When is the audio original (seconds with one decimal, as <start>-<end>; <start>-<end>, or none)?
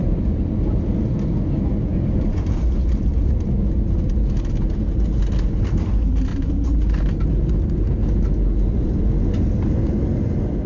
0.5-1.9; 3.5-6.3; 7.5-10.7